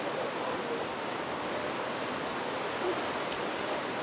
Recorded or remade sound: recorded